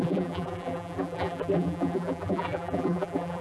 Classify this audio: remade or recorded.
remade